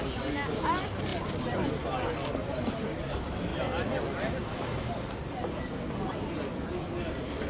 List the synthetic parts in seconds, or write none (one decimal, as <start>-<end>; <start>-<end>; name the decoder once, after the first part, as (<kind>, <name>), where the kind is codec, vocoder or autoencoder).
none